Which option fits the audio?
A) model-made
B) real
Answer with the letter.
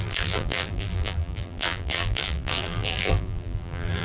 A